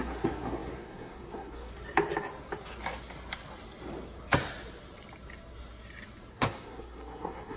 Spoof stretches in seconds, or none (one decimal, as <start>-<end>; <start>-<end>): 0.0-1.7; 6.3-7.6